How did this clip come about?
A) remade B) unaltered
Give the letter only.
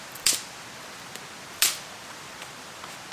B